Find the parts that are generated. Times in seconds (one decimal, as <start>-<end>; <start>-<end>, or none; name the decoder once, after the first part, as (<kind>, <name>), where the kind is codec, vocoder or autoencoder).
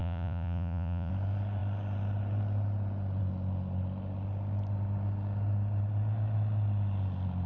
0.0-1.1 (vocoder, Vocos)